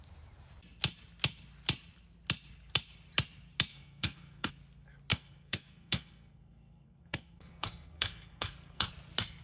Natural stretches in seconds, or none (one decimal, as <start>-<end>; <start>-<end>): 0.0-3.7; 4.5-5.1; 8.9-9.4